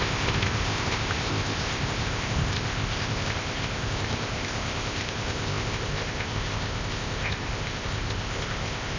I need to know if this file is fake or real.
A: fake